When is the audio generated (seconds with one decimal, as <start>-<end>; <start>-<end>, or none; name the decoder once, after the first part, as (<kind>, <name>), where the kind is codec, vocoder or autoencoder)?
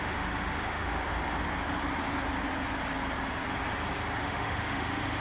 0.0-1.1 (autoencoder, DAC-VAE); 4.2-5.2